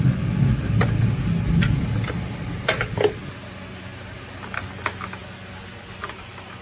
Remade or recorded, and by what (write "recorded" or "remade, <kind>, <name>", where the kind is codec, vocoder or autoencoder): recorded